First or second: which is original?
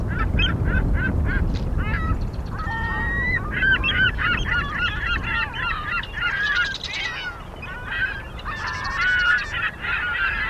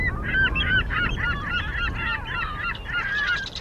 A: second